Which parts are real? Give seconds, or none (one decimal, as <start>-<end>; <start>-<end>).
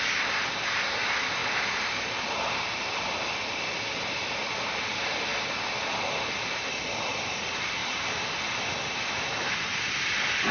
0.0-10.5